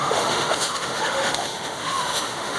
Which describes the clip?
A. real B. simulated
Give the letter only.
B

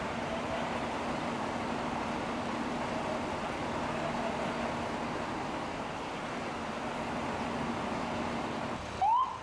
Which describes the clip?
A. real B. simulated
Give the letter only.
A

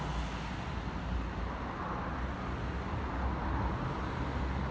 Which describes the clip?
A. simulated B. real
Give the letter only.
B